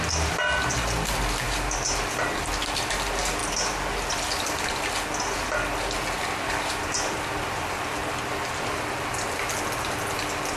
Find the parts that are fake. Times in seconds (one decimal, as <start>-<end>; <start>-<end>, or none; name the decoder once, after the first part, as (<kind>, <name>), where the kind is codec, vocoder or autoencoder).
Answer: none